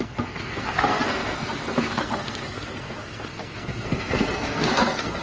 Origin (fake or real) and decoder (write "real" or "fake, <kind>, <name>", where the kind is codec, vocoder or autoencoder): fake, codec, SNAC